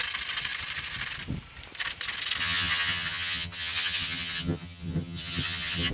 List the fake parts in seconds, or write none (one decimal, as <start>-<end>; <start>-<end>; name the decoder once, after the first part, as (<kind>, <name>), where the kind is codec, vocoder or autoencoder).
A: 2.4-5.9 (vocoder, HiFi-GAN)